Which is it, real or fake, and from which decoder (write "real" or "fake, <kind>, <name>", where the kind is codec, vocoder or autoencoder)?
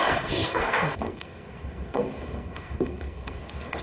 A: fake, codec, SNAC